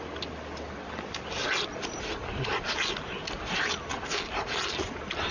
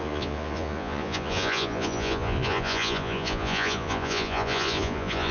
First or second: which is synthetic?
second